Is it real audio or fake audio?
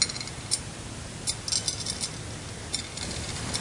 real